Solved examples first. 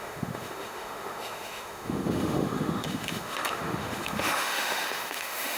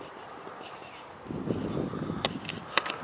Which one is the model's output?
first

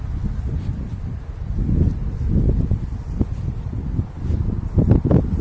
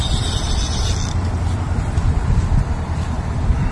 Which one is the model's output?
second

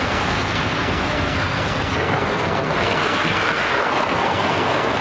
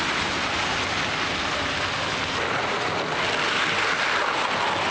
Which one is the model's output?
first